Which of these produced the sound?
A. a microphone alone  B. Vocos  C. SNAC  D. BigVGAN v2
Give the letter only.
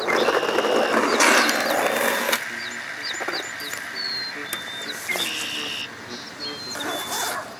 A